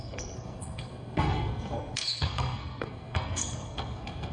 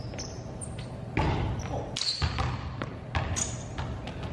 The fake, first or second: first